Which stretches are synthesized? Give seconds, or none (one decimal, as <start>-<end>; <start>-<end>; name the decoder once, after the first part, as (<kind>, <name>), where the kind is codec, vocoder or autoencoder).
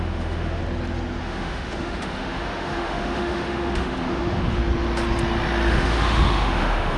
0.0-0.6 (autoencoder, DAC-VAE); 1.2-4.6; 5.7-7.0